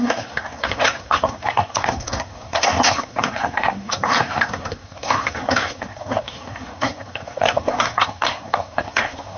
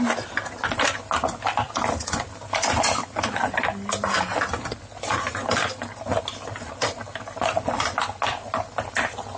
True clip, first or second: second